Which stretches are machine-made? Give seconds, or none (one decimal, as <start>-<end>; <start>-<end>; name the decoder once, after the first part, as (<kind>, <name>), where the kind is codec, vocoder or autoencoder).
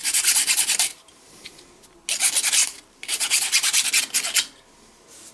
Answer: 0.0-1.5 (vocoder, BigVGAN v2); 2.6-3.9